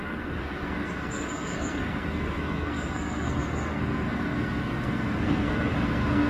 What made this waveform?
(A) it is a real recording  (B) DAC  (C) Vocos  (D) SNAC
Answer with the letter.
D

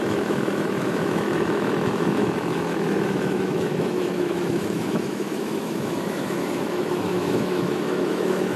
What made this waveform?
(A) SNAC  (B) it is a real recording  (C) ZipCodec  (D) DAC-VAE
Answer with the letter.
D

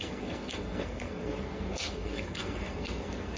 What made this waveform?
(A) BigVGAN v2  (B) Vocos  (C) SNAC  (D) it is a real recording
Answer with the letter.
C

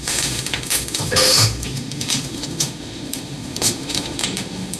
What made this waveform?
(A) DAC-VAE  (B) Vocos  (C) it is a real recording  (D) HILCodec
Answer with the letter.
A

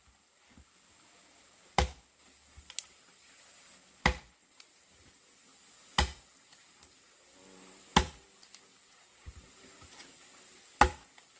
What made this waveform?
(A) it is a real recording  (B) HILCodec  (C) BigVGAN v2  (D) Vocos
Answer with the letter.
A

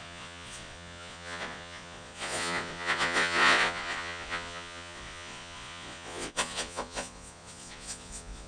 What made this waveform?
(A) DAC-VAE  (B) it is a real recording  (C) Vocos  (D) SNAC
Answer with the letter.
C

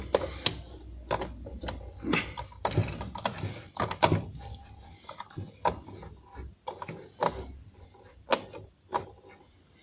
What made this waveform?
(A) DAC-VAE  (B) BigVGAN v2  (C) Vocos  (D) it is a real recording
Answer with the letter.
D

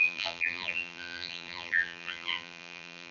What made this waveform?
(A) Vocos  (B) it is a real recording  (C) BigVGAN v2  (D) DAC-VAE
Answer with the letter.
C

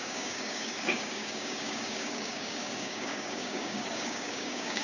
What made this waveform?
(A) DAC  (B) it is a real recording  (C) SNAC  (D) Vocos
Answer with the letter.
A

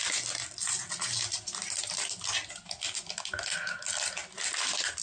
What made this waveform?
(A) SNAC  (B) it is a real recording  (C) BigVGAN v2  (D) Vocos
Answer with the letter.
B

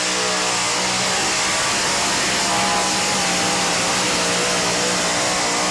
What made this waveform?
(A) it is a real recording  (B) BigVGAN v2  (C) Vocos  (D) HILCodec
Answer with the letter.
A